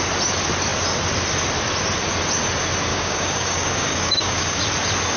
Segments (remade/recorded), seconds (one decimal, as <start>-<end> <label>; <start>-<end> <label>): 0.0-2.9 recorded; 2.9-4.6 remade; 4.6-5.2 recorded